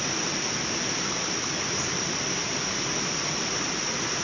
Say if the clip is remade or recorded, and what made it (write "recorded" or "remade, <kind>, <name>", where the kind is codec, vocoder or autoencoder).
remade, vocoder, BigVGAN v2